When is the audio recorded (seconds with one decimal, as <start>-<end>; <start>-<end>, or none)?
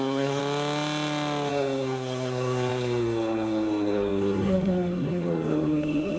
0.4-1.5